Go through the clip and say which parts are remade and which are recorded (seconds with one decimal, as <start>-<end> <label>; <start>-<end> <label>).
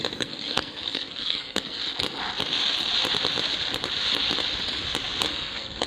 0.0-1.8 remade; 1.8-5.3 recorded; 5.3-5.9 remade